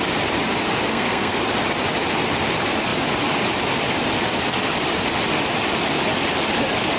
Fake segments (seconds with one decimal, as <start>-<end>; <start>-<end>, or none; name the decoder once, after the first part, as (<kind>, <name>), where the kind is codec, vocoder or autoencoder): 0.9-1.4 (codec, SNAC)